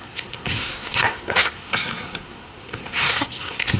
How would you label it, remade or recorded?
remade